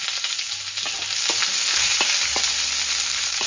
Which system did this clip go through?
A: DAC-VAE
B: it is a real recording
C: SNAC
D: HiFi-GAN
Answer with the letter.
B